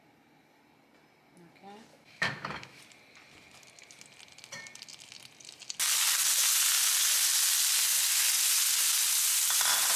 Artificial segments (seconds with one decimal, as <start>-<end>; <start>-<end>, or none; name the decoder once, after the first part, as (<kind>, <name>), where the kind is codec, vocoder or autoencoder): 1.9-2.8 (autoencoder, DAC-VAE)